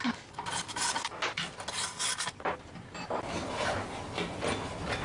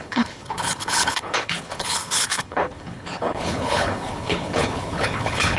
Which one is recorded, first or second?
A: first